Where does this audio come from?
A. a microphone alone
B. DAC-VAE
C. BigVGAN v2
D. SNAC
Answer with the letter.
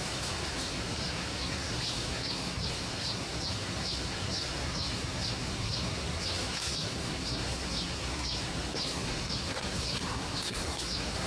D